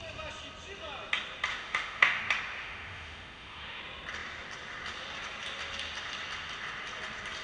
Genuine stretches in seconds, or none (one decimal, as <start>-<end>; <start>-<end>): 0.0-1.5; 2.2-2.6; 3.8-7.4